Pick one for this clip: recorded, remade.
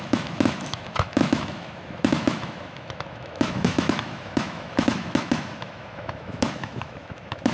remade